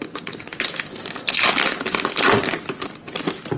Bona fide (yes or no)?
yes